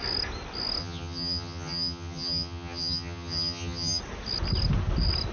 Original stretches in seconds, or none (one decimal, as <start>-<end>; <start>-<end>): 0.0-0.8; 4.0-5.3